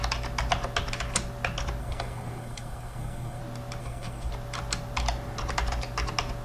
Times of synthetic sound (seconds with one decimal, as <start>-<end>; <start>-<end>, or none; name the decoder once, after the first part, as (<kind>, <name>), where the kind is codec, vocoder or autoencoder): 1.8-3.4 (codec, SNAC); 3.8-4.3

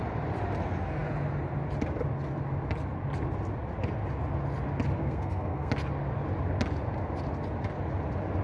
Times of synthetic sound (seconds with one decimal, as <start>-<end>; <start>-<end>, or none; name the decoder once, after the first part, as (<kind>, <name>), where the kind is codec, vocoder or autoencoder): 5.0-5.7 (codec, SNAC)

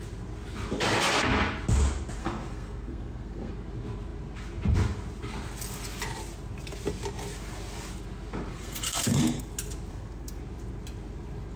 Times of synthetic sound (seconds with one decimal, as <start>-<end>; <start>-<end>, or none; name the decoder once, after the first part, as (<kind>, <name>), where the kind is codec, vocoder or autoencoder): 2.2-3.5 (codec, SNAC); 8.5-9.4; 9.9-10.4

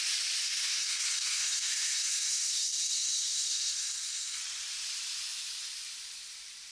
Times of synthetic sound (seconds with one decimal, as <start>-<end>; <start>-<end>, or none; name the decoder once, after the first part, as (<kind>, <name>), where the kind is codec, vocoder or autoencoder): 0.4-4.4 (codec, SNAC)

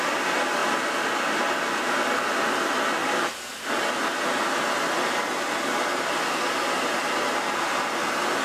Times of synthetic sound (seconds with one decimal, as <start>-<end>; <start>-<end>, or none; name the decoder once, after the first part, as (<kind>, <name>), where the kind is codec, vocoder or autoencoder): none

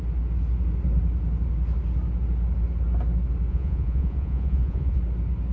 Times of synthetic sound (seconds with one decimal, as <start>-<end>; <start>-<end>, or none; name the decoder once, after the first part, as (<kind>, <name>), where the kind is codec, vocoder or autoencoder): 3.5-5.0 (vocoder, Vocos)